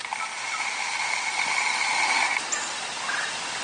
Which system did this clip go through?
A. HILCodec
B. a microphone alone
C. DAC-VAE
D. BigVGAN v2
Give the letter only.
B